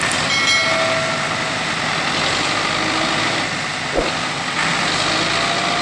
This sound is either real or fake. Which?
real